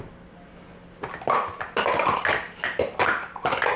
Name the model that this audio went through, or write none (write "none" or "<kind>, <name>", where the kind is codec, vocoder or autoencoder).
none